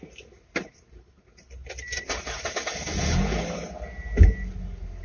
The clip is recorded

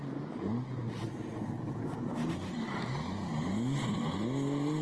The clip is recorded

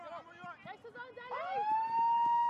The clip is recorded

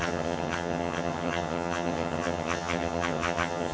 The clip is remade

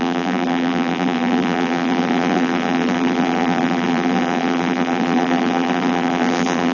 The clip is remade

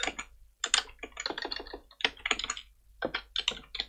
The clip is recorded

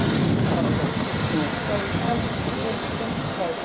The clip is recorded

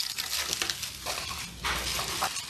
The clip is recorded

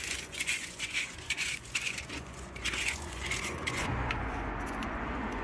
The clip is remade